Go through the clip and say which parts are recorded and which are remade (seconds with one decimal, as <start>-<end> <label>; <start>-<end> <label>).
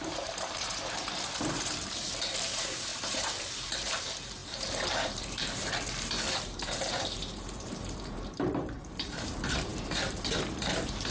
0.0-11.1 remade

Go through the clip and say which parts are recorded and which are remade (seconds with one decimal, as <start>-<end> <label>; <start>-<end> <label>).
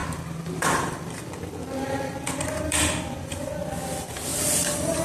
0.0-2.8 remade; 2.8-4.3 recorded; 4.3-5.0 remade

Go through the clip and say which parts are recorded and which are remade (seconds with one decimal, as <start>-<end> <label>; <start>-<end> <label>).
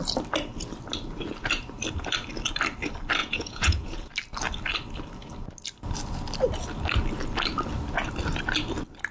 0.0-3.2 recorded; 3.2-4.1 remade; 4.1-9.1 recorded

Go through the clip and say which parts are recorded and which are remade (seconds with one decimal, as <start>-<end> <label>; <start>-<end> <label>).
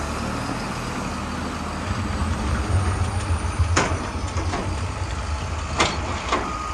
0.0-6.7 recorded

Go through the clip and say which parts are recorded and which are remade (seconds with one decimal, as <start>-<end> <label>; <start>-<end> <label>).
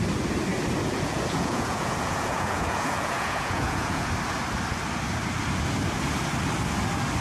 0.0-0.8 recorded; 0.8-4.1 remade; 4.1-7.2 recorded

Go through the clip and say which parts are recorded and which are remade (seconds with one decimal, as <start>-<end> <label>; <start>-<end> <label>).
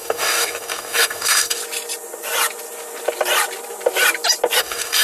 0.0-1.6 remade; 1.6-4.6 recorded; 4.6-5.0 remade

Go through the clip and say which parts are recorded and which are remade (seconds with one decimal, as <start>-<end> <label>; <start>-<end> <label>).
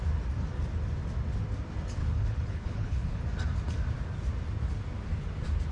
0.0-2.0 recorded; 2.0-3.2 remade; 3.2-5.7 recorded